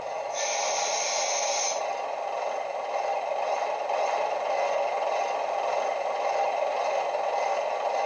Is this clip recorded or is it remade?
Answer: recorded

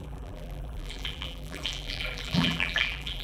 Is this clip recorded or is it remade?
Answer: remade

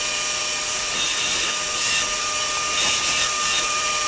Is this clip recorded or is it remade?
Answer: remade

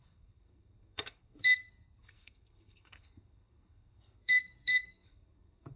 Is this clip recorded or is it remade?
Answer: remade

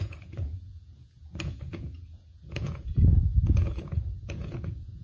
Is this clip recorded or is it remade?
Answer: remade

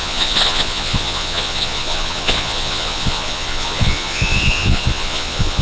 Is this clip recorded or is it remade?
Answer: remade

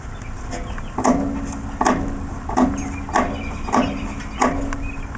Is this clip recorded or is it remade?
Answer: recorded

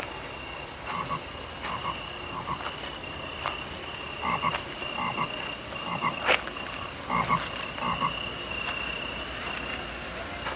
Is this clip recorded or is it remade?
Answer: recorded